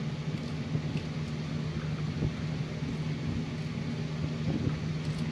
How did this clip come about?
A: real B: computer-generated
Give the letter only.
A